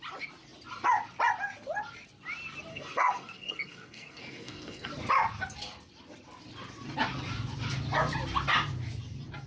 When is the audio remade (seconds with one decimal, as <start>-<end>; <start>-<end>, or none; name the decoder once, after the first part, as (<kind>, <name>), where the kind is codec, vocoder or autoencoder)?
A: 2.7-4.9 (codec, SNAC)